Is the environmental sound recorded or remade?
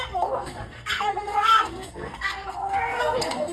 remade